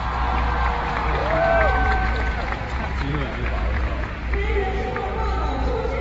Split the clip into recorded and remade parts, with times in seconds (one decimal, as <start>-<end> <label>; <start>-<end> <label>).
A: 0.0-1.2 recorded; 1.2-4.0 remade; 4.0-6.0 recorded